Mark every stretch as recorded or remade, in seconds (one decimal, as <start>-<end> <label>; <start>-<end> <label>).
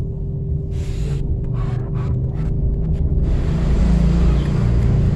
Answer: 0.0-3.1 recorded; 3.1-3.8 remade; 3.8-5.2 recorded